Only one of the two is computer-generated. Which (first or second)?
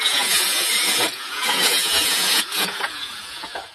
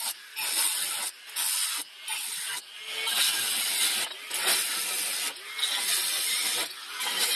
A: first